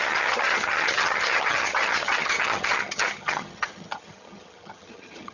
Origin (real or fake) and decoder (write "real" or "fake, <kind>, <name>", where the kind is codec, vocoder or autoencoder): fake, vocoder, HiFi-GAN